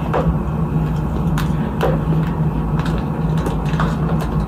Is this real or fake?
real